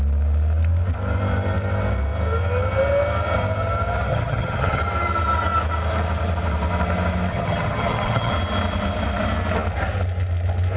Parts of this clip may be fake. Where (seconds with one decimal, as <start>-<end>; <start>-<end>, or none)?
4.1-4.8; 7.3-8.3